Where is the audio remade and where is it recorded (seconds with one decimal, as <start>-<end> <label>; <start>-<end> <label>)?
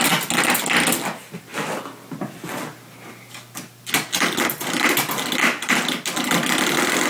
0.0-7.1 recorded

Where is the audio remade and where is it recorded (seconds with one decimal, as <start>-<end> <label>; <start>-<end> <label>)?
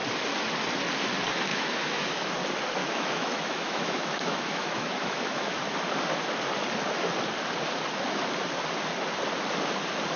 0.0-1.5 recorded; 1.5-2.3 remade; 2.3-2.8 recorded; 2.8-5.6 remade; 5.6-10.2 recorded